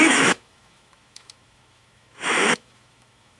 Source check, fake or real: fake